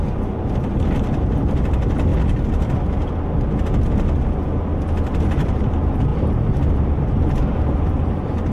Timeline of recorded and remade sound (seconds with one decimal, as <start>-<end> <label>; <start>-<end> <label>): 0.0-2.1 remade; 2.1-5.2 recorded; 5.2-8.5 remade